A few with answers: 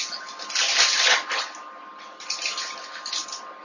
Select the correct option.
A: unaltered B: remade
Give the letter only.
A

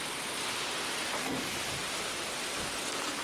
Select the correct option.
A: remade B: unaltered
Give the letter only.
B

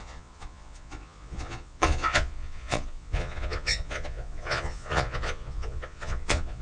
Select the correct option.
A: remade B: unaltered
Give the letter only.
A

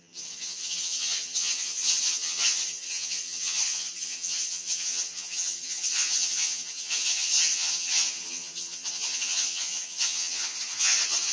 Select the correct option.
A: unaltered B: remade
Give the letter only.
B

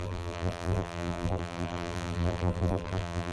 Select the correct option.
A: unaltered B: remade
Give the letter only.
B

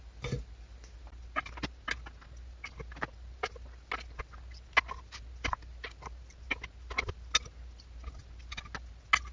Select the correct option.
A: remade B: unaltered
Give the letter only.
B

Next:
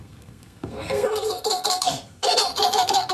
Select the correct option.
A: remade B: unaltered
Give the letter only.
A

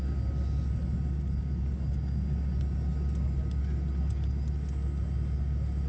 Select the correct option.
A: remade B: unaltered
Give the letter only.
B